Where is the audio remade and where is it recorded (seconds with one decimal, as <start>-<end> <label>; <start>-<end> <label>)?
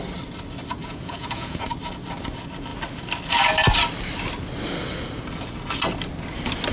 0.0-0.8 recorded; 0.8-1.6 remade; 1.6-6.7 recorded